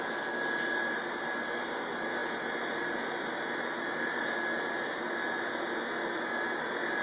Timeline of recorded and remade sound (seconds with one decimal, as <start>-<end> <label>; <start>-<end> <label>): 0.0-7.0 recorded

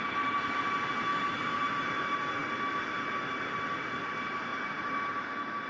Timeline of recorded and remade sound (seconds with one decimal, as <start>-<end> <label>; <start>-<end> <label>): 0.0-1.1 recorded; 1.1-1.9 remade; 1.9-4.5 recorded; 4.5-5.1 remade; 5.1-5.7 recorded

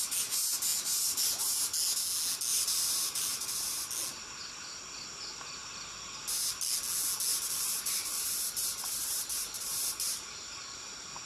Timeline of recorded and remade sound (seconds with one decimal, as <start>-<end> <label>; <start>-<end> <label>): 0.0-2.5 recorded; 2.5-3.9 remade; 3.9-7.3 recorded; 7.3-10.9 remade; 10.9-11.3 recorded

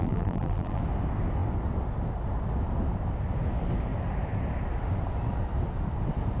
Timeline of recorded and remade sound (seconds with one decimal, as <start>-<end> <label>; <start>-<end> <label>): 0.0-0.8 remade; 0.8-6.4 recorded

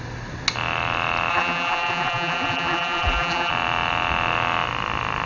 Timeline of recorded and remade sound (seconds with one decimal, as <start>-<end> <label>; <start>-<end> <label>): 0.0-1.3 recorded; 1.3-3.5 remade; 3.5-5.3 recorded

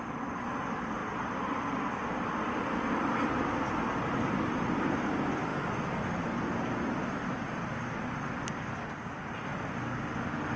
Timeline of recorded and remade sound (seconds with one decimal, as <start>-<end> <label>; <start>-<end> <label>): 0.0-10.6 recorded

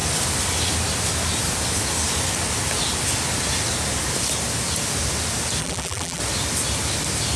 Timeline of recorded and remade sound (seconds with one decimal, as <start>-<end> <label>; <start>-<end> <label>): 0.0-5.6 recorded; 5.6-6.2 remade; 6.2-7.4 recorded